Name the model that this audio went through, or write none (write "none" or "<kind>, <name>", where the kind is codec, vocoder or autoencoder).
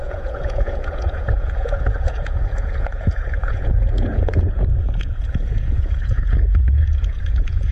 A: vocoder, Vocos